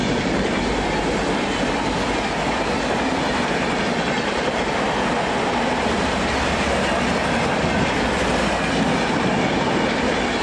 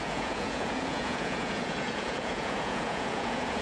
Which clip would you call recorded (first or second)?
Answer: first